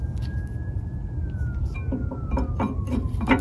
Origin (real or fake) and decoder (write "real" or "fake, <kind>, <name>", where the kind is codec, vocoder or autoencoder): real